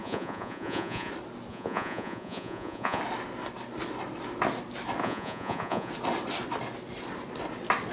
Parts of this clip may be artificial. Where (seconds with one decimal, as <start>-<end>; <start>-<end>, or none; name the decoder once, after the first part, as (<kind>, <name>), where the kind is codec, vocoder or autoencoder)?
0.0-1.1 (vocoder, Vocos); 1.5-3.0; 5.0-5.9